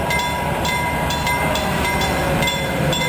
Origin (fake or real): fake